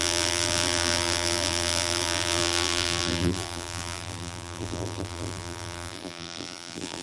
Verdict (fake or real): fake